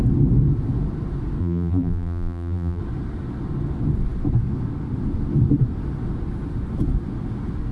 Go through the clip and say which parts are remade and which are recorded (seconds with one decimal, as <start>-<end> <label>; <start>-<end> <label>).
0.0-1.4 recorded; 1.4-2.8 remade; 2.8-7.7 recorded